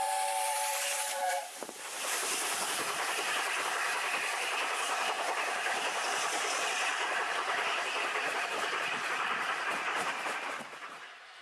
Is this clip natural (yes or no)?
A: no